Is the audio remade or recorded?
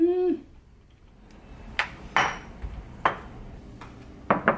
recorded